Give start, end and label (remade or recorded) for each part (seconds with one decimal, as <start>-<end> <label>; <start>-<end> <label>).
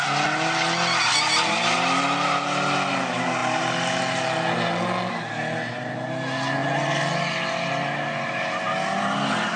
0.0-9.6 recorded